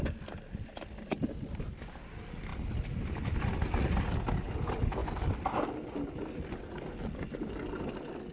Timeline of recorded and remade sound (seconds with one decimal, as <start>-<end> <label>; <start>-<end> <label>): 0.0-2.5 recorded; 2.5-3.1 remade; 3.1-8.3 recorded